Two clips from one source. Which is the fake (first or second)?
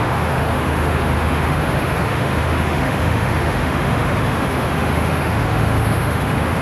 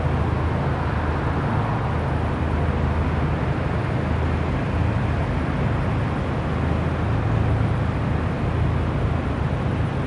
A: first